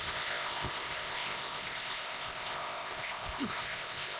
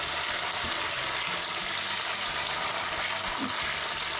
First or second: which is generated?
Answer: first